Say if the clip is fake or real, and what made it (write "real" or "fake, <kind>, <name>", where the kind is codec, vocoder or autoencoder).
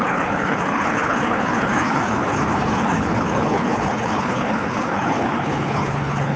fake, codec, HILCodec